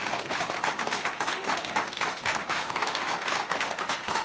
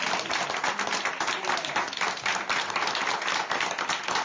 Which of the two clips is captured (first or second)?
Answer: second